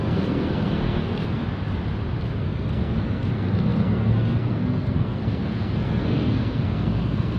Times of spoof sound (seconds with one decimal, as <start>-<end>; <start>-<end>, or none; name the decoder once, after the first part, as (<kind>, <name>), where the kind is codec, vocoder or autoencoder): 0.0-1.4 (codec, SNAC); 2.4-7.4